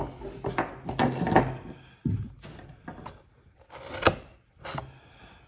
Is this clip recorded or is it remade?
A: recorded